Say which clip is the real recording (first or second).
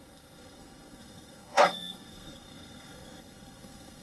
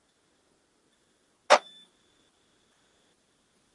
second